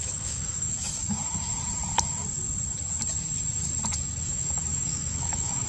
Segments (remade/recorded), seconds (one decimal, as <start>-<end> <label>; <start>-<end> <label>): 0.0-1.0 remade; 1.0-4.0 recorded; 4.0-5.7 remade